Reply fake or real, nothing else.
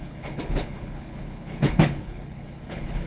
fake